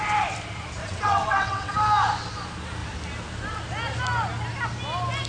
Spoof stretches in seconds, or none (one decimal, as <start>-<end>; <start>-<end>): 0.8-1.7